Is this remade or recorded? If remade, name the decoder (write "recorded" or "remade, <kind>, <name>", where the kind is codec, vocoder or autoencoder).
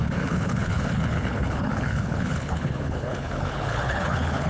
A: remade, codec, HILCodec